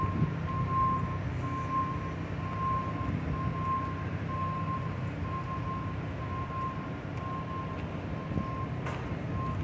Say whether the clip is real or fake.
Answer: real